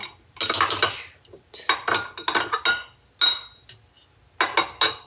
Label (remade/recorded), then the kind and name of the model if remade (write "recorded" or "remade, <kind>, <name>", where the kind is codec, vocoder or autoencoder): recorded